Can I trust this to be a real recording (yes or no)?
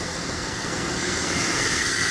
no